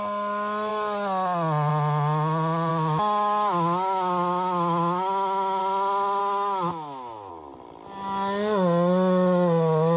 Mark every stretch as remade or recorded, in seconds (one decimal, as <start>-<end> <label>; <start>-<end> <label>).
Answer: 0.0-2.7 recorded; 2.7-5.6 remade; 5.6-6.2 recorded; 6.2-7.3 remade; 7.3-10.0 recorded